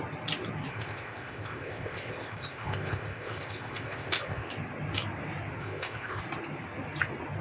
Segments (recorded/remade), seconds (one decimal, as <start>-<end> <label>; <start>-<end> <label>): 0.0-0.7 recorded; 0.7-4.5 remade; 4.5-5.6 recorded; 5.6-6.2 remade; 6.2-7.4 recorded